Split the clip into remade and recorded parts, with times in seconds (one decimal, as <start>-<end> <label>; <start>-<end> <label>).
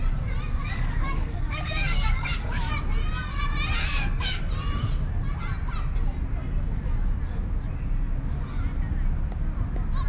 0.0-0.6 recorded; 0.6-2.7 remade; 2.7-3.8 recorded; 3.8-4.4 remade; 4.4-10.1 recorded